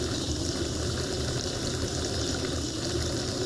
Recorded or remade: recorded